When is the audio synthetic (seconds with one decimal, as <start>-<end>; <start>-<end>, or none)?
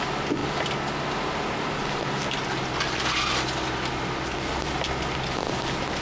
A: none